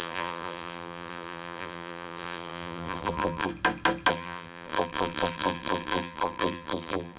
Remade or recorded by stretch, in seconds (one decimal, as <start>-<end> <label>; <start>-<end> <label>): 0.0-3.5 remade; 3.5-4.1 recorded; 4.1-7.2 remade